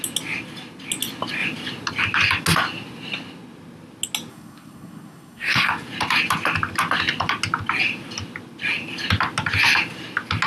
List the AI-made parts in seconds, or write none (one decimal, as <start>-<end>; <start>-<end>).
4.3-5.7